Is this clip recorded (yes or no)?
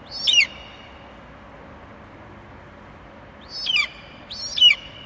yes